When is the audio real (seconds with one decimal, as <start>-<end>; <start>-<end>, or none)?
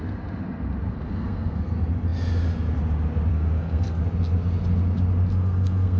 0.0-0.9; 1.7-3.3; 4.0-5.3